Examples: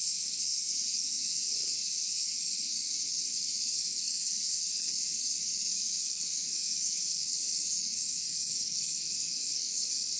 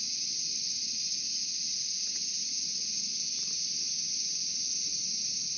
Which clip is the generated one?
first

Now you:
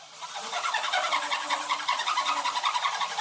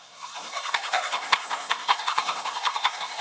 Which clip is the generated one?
second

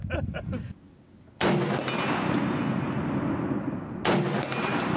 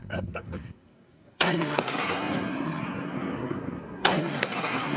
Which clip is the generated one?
second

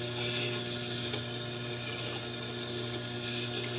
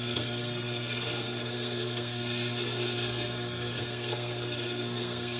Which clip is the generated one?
second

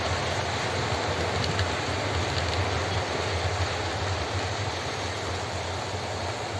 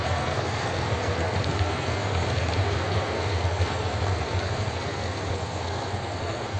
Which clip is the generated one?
second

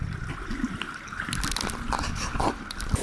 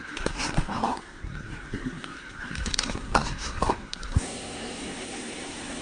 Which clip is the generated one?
second